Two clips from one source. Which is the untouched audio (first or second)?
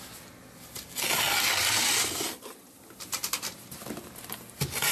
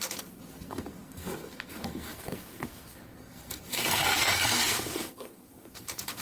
first